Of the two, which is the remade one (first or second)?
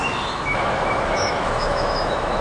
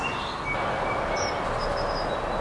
first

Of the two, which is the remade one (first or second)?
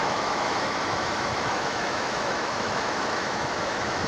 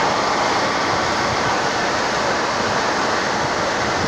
first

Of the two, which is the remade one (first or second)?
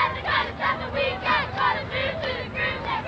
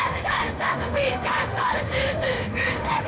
second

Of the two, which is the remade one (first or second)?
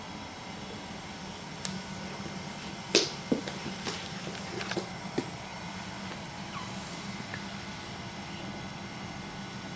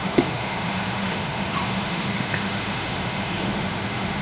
second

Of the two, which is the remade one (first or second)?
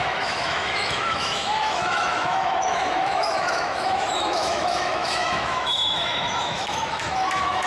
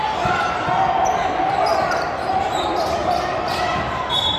first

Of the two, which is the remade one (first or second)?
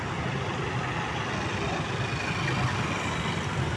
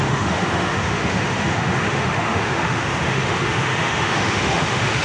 second